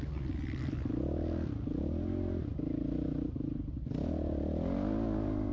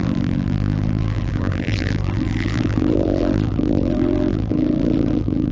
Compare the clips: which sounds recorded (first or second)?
first